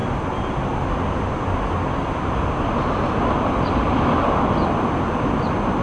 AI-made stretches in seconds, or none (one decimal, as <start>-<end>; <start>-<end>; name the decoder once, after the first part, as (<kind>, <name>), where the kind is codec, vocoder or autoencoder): none